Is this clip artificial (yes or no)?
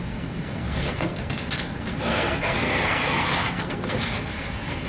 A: yes